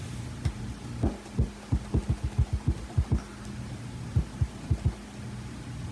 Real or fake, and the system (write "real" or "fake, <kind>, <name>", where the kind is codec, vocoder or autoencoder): real